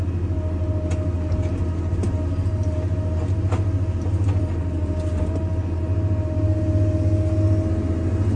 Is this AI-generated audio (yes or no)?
no